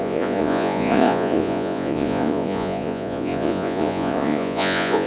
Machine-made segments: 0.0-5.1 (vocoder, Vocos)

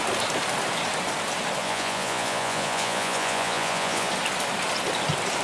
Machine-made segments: 1.6-4.1 (vocoder, Vocos)

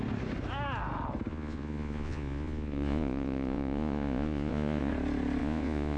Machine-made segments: 1.3-4.9 (vocoder, Vocos); 5.4-6.0